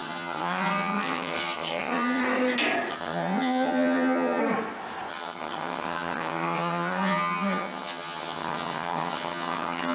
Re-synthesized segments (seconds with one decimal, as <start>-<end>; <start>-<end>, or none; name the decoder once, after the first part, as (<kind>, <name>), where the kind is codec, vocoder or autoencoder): 0.0-2.2 (vocoder, HiFi-GAN); 2.9-4.4; 5.1-9.9